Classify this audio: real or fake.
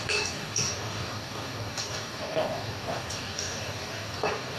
fake